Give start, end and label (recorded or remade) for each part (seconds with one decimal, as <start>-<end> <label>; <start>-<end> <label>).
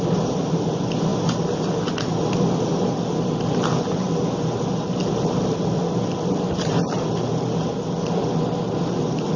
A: 0.0-9.4 recorded